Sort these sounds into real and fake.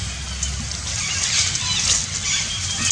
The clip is real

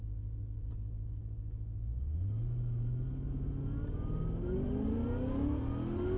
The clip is real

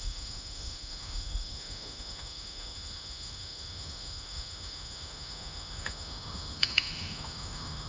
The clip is fake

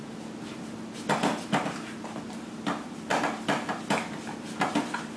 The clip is real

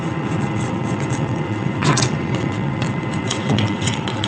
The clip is fake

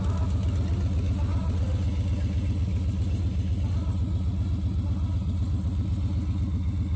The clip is real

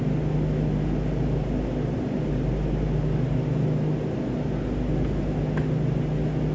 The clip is real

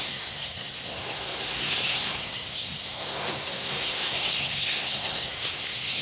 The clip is fake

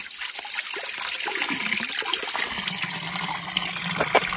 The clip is fake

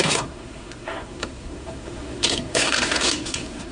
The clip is fake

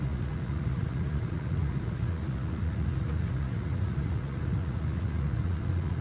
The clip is fake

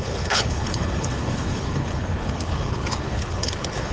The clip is fake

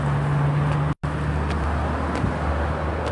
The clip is real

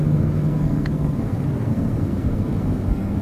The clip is fake